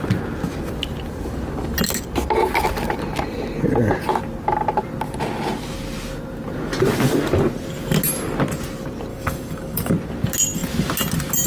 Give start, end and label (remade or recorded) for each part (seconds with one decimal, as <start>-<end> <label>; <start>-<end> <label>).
0.0-9.1 recorded; 9.1-9.9 remade; 9.9-11.5 recorded